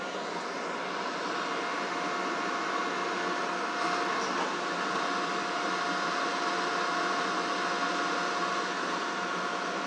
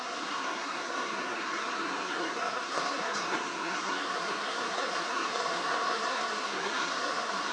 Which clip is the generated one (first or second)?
second